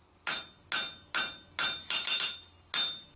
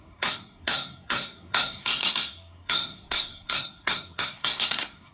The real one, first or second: first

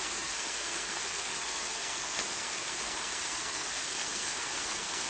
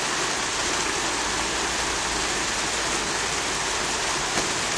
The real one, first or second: second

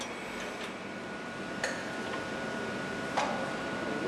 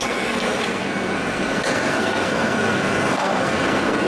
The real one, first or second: first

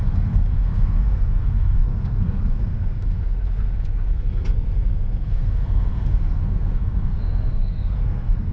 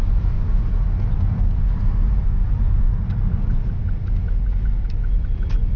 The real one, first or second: second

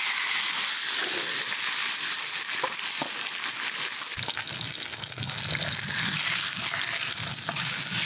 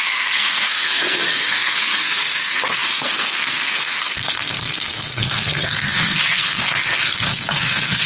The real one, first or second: first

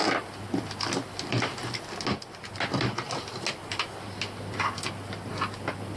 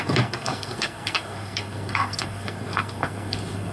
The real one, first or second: first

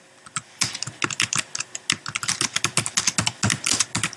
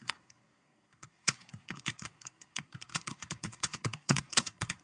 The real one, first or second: first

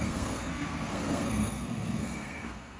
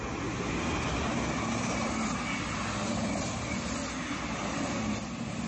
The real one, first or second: second